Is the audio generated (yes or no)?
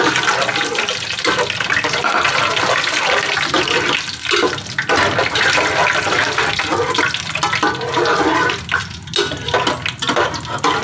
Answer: no